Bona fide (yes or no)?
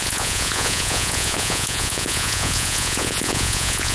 no